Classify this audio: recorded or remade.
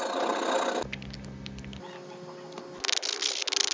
recorded